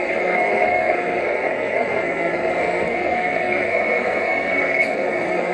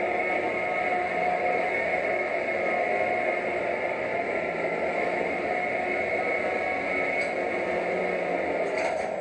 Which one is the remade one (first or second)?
first